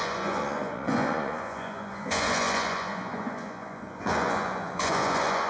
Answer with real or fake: fake